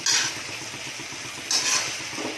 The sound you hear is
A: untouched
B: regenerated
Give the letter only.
A